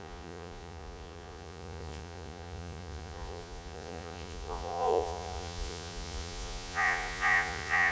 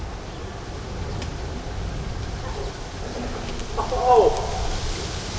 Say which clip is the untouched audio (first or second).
second